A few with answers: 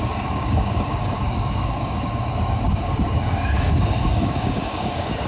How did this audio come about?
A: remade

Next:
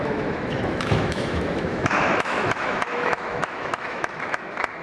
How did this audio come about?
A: remade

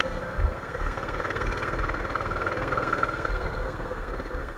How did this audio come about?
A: remade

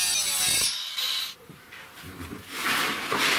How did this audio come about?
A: recorded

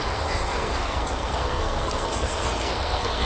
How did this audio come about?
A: remade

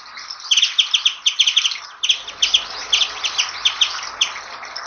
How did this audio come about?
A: recorded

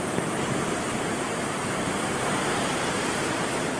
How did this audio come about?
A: remade